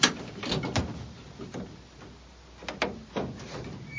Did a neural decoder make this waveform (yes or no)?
no